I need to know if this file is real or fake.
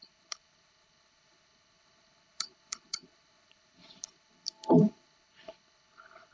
fake